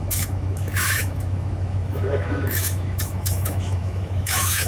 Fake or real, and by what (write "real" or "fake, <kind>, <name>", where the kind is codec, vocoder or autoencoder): fake, autoencoder, DAC-VAE